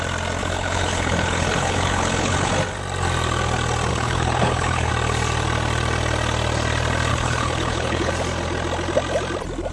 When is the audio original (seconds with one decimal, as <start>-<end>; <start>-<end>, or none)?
0.0-0.4; 2.5-3.9; 4.9-7.1; 8.1-9.7